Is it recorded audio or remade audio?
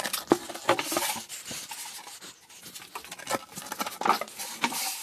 recorded